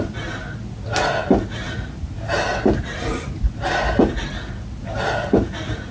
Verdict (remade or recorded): recorded